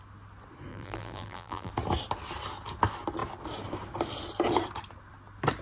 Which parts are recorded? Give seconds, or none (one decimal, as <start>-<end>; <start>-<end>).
0.0-0.7; 1.7-5.6